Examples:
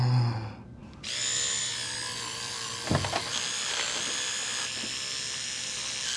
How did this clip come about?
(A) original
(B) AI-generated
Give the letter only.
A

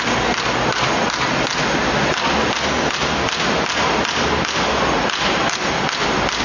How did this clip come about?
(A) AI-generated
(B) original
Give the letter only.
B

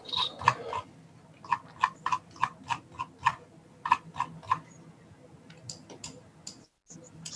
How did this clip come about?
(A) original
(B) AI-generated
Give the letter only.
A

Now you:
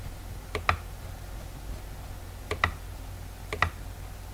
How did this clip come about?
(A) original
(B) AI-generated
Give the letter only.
A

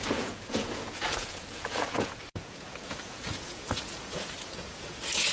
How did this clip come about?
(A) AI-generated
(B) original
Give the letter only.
A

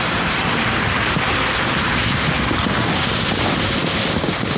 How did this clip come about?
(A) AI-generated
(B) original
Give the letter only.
A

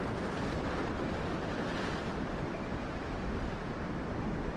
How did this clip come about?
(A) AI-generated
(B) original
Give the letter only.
A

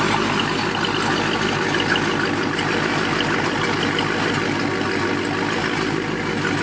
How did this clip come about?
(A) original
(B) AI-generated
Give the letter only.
A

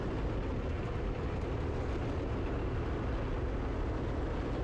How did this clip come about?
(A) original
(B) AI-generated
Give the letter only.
A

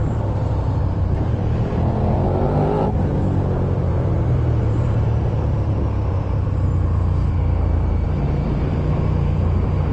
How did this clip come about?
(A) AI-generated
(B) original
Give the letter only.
A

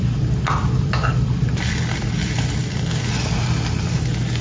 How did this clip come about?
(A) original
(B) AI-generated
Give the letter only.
A